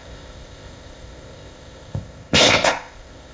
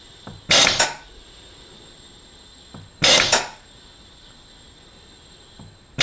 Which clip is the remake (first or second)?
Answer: first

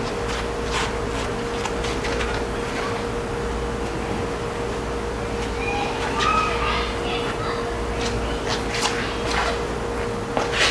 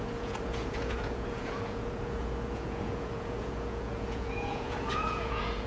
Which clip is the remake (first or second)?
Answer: second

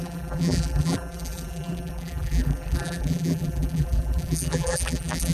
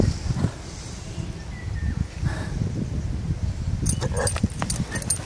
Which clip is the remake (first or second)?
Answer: first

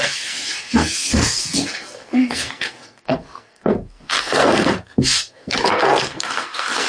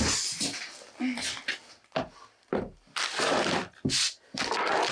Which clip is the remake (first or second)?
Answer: first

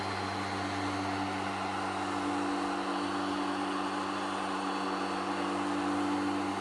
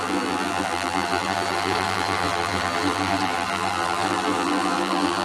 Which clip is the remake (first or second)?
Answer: second